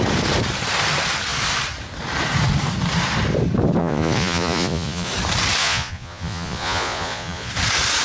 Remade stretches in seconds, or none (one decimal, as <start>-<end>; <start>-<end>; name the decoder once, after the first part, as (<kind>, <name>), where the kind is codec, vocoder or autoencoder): 3.8-5.1 (vocoder, Vocos); 5.6-7.5